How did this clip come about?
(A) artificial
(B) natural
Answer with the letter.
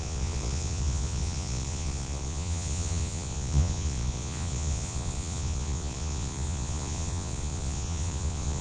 A